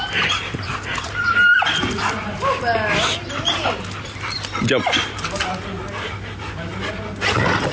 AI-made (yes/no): no